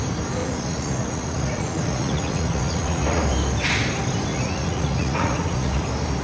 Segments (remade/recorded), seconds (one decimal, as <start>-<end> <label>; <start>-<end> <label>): 0.0-0.4 recorded; 0.4-3.2 remade; 3.2-4.3 recorded; 4.3-5.8 remade; 5.8-6.2 recorded